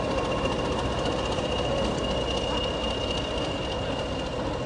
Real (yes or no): yes